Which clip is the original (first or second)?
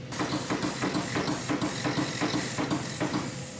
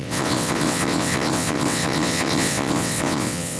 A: first